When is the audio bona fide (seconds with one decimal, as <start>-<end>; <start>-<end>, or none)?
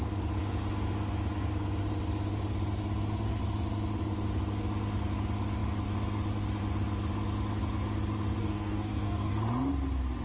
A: 0.0-8.4; 9.3-10.2